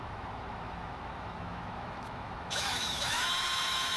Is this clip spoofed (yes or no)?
yes